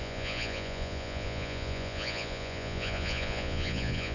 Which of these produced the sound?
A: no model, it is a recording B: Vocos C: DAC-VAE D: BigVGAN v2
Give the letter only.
B